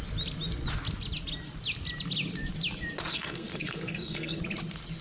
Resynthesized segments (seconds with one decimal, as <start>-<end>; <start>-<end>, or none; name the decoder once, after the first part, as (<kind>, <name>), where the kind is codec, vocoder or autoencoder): 3.1-4.4 (codec, SNAC)